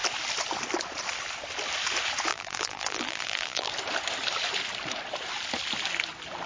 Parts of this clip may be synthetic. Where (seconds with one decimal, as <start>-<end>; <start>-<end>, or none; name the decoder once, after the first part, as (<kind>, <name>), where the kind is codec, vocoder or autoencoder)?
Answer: 2.3-3.7 (vocoder, BigVGAN v2)